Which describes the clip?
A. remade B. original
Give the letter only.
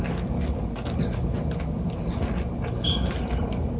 B